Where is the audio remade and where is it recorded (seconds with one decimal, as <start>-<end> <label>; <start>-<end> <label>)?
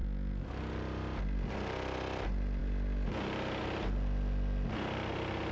0.0-5.5 recorded